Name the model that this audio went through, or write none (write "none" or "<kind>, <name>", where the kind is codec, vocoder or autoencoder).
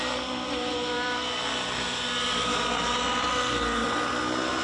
none